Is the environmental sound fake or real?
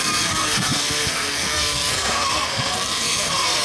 fake